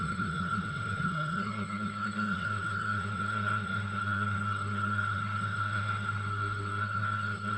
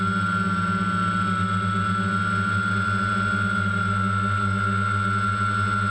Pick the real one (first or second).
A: second